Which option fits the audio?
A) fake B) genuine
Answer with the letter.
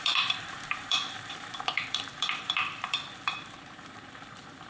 A